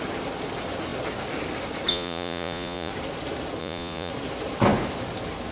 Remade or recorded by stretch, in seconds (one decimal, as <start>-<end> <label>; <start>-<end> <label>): 0.0-1.9 recorded; 1.9-2.9 remade; 2.9-3.6 recorded; 3.6-4.1 remade; 4.1-5.5 recorded